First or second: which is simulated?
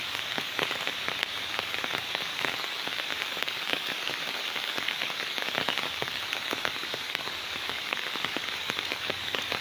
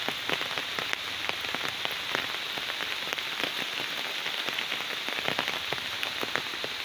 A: first